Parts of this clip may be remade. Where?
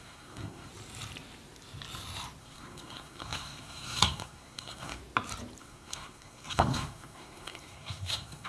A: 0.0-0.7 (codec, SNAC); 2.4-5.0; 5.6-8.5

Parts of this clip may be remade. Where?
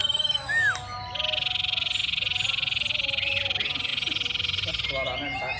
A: none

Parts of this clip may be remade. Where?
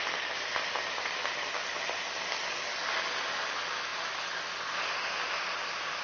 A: none